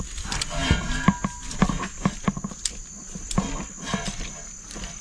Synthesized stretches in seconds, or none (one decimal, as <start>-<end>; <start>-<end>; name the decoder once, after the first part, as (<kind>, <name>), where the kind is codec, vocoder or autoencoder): none